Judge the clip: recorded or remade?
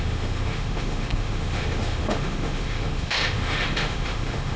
remade